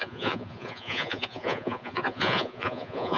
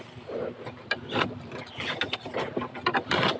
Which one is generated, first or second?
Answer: first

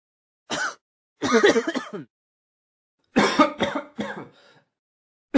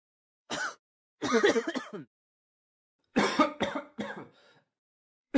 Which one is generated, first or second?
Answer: second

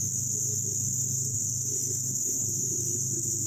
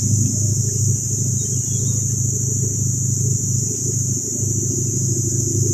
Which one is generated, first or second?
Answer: first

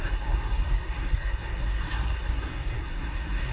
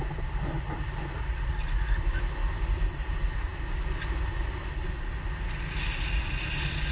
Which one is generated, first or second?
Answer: first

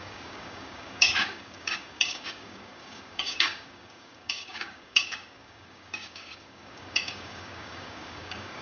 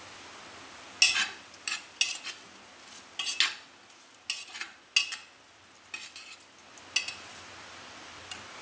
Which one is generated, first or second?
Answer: first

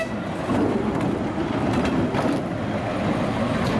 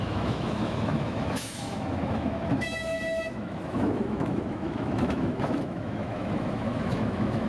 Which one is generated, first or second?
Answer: second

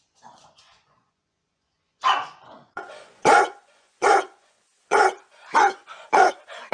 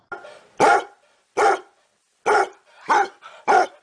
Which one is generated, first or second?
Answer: first